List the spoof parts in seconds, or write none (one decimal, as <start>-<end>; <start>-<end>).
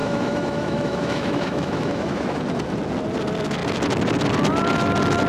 0.0-2.4